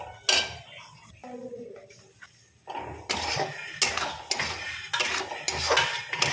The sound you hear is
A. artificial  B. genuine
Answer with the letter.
B